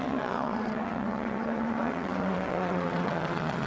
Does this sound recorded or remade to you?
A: remade